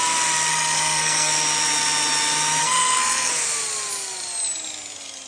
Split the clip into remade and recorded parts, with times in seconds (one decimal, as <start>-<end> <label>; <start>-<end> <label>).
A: 0.0-0.5 recorded; 0.5-1.3 remade; 1.3-2.6 recorded; 2.6-3.3 remade; 3.3-5.3 recorded